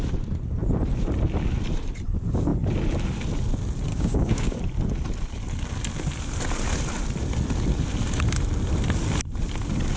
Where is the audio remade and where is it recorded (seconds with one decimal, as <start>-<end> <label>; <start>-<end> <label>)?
0.0-3.9 recorded; 3.9-4.6 remade; 4.6-10.0 recorded